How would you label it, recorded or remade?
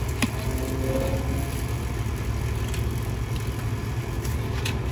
recorded